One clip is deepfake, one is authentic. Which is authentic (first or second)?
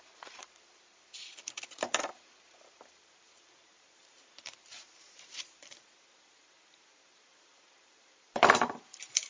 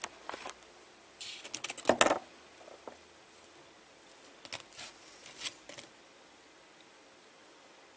second